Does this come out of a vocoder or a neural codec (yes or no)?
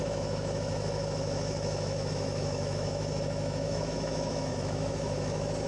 yes